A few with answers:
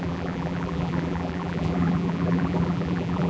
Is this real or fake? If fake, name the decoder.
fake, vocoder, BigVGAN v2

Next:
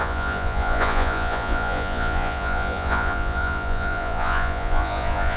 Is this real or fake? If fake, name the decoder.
fake, vocoder, Vocos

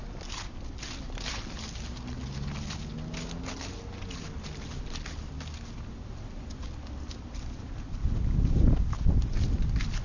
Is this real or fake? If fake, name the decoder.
real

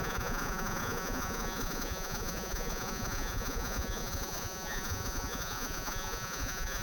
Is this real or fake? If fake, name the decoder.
fake, vocoder, Vocos